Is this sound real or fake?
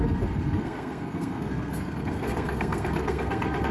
fake